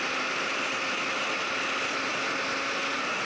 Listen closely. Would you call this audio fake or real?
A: real